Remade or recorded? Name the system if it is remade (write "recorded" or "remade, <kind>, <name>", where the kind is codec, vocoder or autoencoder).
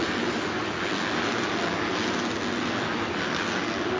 recorded